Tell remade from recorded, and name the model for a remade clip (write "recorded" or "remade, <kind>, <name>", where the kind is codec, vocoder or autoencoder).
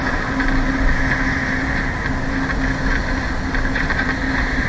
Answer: recorded